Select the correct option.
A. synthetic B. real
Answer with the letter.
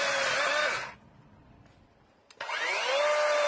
B